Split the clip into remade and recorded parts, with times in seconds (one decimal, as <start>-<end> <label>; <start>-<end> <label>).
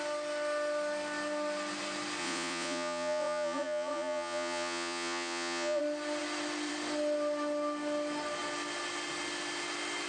0.0-2.2 recorded; 2.2-5.8 remade; 5.8-10.1 recorded